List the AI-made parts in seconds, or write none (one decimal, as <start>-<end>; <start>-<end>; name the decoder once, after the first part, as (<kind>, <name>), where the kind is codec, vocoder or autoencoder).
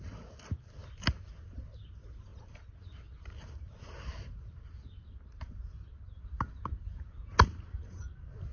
none